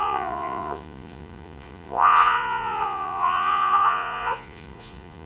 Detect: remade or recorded remade